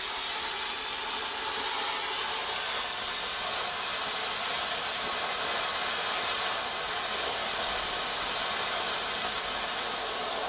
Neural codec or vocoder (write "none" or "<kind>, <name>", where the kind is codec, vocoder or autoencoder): none